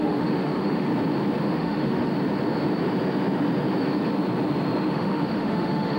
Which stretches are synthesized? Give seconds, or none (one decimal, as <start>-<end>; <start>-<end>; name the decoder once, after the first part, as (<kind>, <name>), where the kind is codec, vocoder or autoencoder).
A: 0.0-0.9 (autoencoder, DAC-VAE); 1.4-2.1; 4.9-6.0